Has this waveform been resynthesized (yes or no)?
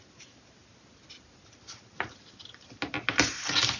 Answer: no